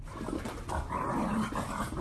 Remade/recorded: recorded